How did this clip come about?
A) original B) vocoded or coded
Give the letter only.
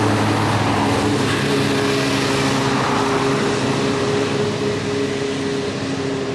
A